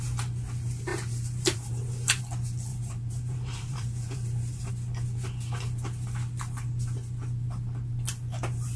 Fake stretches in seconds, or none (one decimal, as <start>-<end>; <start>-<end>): 0.9-2.2; 2.7-4.7